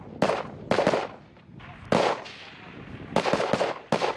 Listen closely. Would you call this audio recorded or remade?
recorded